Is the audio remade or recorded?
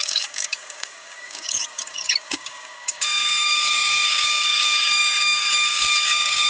remade